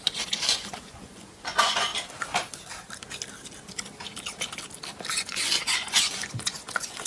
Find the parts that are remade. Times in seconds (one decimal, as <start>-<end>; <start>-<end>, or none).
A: 0.0-1.9; 5.1-7.1